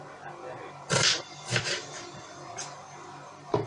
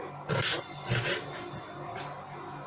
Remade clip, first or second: first